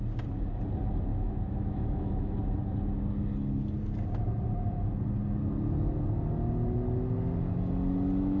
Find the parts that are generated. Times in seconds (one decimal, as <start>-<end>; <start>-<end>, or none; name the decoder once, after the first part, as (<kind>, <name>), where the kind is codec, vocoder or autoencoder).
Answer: 1.1-2.3 (autoencoder, DAC-VAE)